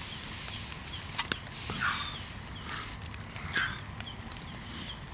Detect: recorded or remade recorded